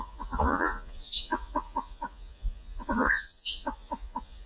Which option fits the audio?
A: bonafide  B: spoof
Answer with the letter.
B